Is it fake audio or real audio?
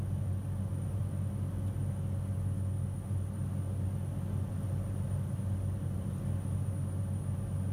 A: real